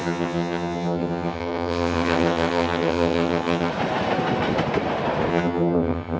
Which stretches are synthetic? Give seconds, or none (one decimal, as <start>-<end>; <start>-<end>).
0.0-3.7; 5.3-6.2